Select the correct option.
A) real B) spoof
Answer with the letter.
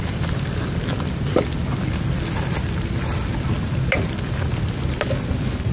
A